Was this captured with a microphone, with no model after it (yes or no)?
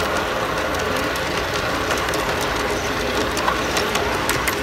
yes